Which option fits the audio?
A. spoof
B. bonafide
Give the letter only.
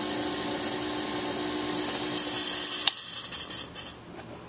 B